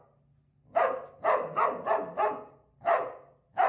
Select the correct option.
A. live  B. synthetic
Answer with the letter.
A